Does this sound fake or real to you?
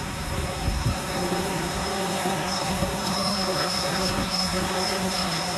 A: fake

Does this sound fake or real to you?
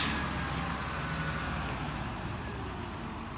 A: real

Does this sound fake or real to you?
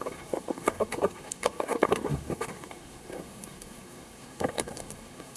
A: fake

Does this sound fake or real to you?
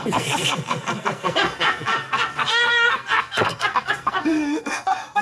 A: fake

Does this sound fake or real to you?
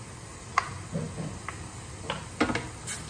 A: real